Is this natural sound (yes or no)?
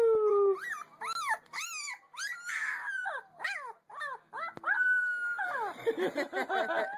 yes